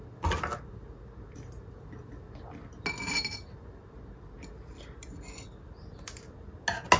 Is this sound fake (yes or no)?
no